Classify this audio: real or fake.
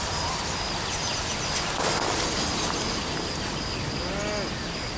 real